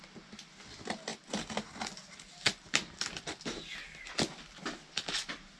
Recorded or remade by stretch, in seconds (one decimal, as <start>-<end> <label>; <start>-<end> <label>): 0.0-5.6 recorded